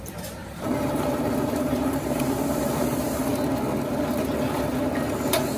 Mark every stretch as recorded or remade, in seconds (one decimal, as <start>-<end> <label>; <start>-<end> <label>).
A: 0.0-3.3 remade; 3.3-5.6 recorded